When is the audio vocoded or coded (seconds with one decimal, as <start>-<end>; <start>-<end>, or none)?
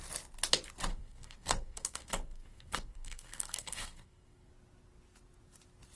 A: 0.9-4.5